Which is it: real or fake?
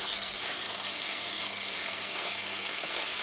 fake